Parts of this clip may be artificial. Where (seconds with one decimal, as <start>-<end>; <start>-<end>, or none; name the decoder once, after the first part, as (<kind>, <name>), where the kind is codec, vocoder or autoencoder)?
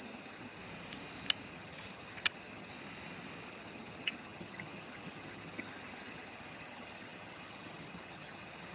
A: 0.0-0.6 (vocoder, HiFi-GAN); 1.5-2.7; 3.5-8.7